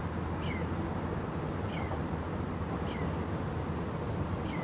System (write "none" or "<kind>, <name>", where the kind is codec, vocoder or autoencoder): none